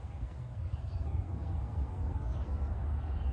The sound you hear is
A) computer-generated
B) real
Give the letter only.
A